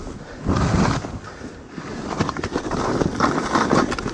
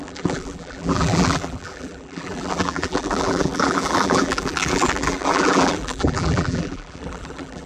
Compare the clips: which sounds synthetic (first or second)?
second